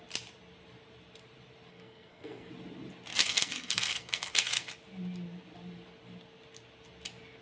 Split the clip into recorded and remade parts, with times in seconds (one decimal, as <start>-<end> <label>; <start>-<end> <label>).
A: 0.0-1.7 recorded; 1.7-2.5 remade; 2.5-3.1 recorded; 3.1-4.7 remade; 4.7-7.4 recorded